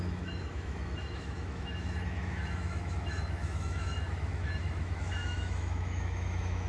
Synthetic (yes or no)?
yes